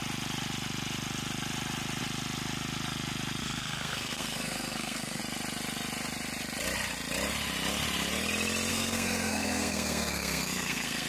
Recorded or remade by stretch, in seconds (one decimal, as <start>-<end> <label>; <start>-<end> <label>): 0.0-3.4 recorded; 3.4-5.2 remade; 5.2-8.7 recorded; 8.7-11.1 remade